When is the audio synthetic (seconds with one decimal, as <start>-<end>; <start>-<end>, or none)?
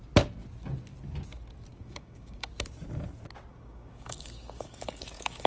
1.7-2.5; 3.5-5.5